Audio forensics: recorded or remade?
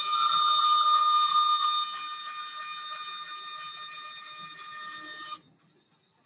recorded